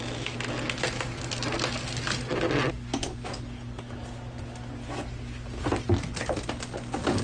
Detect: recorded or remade recorded